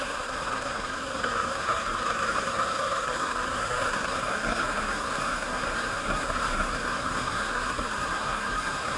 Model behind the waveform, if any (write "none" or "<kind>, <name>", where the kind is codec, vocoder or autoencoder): codec, SNAC